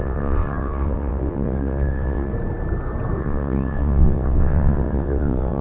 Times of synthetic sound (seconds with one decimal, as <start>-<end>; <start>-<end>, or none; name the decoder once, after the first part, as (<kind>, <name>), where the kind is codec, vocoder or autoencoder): 0.0-2.3 (vocoder, WaveNeXt); 3.2-5.6